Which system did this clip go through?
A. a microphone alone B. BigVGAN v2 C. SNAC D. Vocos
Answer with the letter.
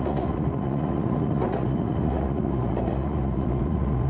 D